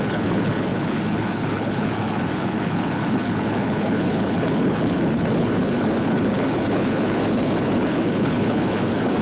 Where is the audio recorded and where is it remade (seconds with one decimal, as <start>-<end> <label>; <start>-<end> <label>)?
0.0-9.2 remade